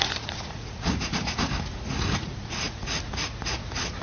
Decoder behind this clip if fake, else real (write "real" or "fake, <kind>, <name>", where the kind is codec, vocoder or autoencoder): fake, vocoder, Vocos